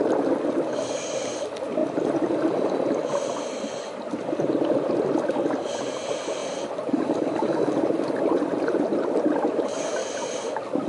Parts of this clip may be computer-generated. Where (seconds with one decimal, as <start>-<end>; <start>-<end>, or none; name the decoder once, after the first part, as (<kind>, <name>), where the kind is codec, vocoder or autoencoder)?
6.4-9.3 (vocoder, BigVGAN v2)

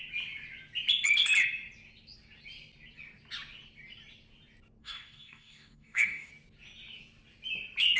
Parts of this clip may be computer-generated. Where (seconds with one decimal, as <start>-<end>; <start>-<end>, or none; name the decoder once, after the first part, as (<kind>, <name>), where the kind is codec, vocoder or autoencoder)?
4.8-6.3 (codec, DAC)

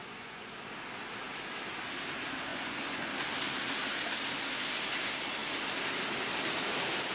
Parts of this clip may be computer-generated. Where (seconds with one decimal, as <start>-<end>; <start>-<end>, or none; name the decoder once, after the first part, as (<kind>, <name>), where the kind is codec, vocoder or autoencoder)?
0.0-0.6 (vocoder, Vocos); 2.5-3.1

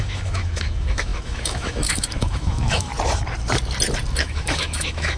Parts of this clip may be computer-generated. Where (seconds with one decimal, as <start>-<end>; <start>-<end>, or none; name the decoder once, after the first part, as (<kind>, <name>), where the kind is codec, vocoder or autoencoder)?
0.0-2.9 (autoencoder, DAC-VAE); 4.2-5.2